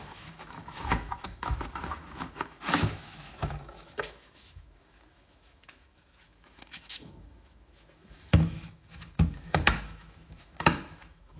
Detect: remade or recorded remade